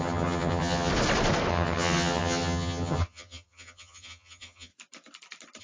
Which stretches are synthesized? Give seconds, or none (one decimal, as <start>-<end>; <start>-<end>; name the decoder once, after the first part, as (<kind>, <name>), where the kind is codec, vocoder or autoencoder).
0.0-0.9 (vocoder, HiFi-GAN); 1.5-4.7